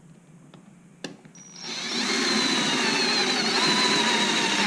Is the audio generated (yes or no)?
no